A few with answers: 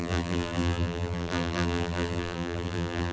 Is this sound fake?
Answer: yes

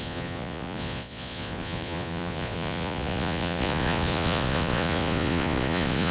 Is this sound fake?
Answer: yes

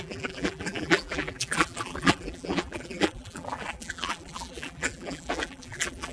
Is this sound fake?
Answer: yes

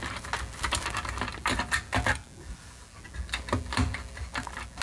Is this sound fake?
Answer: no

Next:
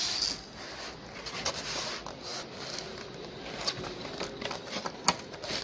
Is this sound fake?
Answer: no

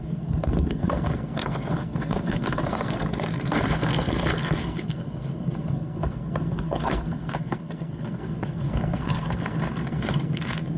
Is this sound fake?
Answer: yes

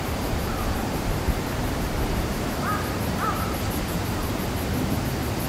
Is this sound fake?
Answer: yes